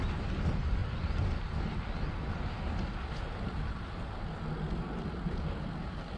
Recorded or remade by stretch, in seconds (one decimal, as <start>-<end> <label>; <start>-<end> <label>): 0.0-6.2 recorded